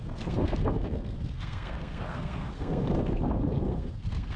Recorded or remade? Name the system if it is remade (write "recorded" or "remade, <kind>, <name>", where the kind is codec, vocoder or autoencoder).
remade, codec, SNAC